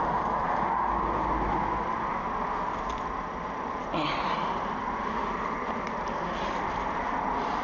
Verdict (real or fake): real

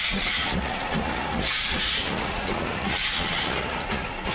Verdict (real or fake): fake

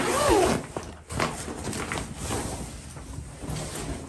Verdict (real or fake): real